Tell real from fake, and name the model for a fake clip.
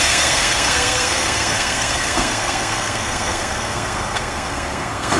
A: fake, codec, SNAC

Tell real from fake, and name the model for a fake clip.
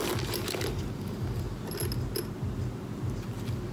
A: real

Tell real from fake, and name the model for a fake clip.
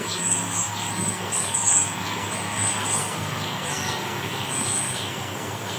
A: fake, codec, SNAC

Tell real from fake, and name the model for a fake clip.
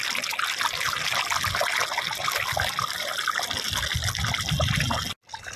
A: real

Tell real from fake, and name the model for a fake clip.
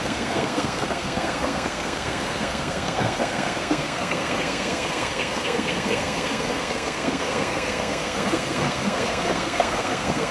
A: fake, codec, SNAC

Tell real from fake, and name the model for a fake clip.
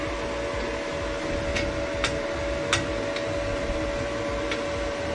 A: real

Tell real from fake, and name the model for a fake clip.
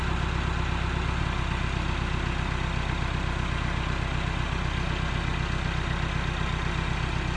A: real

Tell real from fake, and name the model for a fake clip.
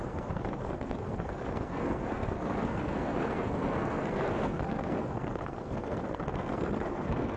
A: fake, codec, SNAC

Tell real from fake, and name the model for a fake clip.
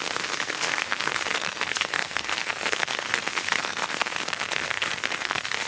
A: fake, codec, SNAC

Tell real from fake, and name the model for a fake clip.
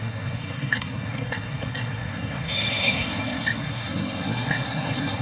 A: fake, codec, SNAC